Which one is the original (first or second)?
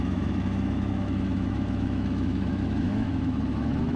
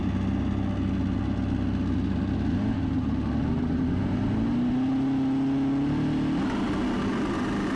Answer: second